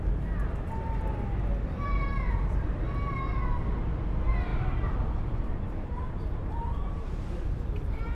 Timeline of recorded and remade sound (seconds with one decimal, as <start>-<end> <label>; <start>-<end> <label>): 0.0-4.5 recorded; 4.5-7.4 remade; 7.4-8.1 recorded